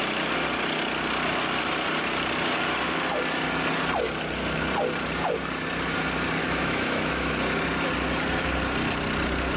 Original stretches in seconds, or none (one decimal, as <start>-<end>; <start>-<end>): 0.0-6.4; 7.3-9.6